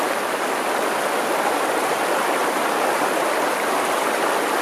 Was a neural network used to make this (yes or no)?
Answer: no